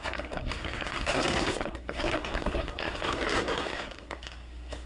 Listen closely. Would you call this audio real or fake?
fake